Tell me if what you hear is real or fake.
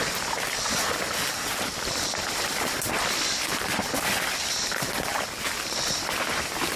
real